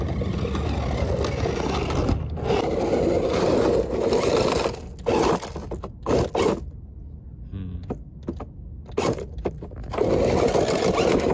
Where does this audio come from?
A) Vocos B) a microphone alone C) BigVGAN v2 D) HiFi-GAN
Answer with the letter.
B